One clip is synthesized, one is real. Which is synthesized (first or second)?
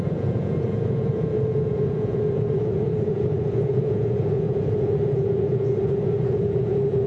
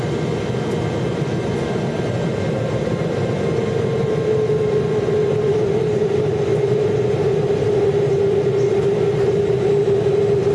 first